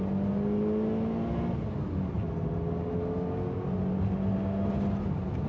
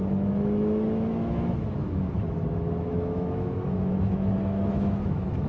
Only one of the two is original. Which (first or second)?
first